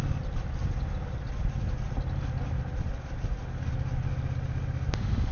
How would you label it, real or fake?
real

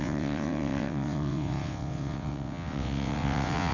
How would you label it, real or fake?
fake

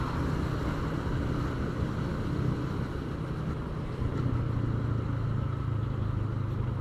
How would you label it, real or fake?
real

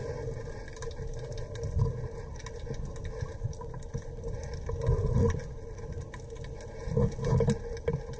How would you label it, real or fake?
real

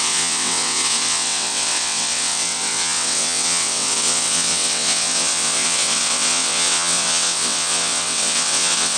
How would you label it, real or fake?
fake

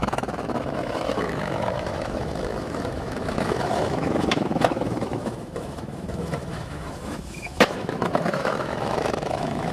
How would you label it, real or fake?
fake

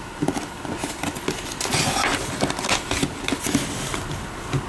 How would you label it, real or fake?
real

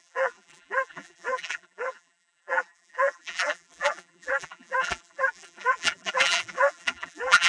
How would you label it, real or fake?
fake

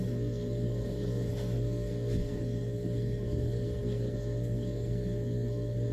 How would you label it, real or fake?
fake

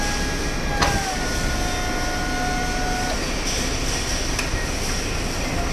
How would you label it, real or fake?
real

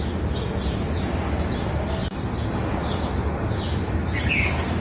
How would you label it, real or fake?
real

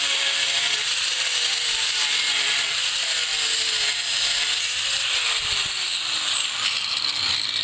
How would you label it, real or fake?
fake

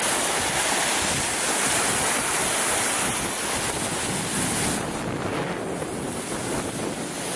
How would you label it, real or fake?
real